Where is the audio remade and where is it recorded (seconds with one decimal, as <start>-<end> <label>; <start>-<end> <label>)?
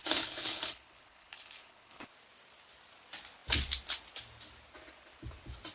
0.0-2.1 remade; 2.1-5.7 recorded